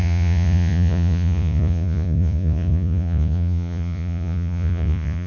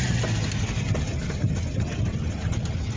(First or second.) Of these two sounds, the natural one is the second